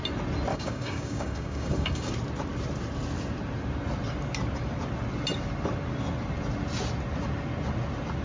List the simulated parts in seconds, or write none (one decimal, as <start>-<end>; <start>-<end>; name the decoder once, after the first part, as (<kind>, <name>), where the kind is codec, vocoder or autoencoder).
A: 0.5-2.1 (codec, DAC)